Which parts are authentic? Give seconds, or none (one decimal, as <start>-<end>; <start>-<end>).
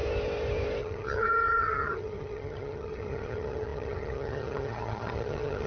0.0-0.8